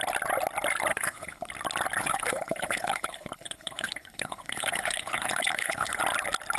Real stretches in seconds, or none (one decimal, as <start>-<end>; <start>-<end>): 0.0-0.9; 1.5-2.0; 6.0-6.6